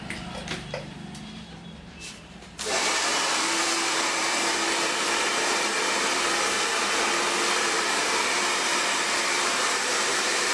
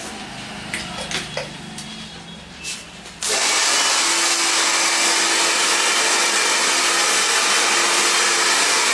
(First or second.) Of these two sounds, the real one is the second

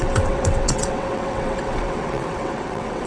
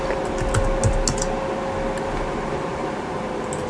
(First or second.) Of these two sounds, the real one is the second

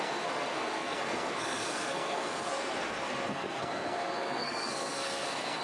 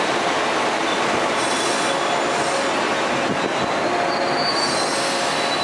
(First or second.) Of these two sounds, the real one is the second